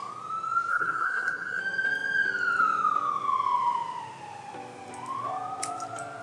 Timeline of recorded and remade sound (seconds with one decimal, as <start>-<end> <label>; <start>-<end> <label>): 0.0-0.7 recorded; 0.7-1.6 remade; 1.6-6.2 recorded